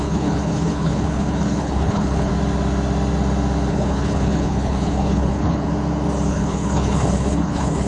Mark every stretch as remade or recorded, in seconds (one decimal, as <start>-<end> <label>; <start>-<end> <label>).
0.0-2.3 remade; 2.3-3.7 recorded; 3.7-5.7 remade; 5.7-6.3 recorded; 6.3-7.9 remade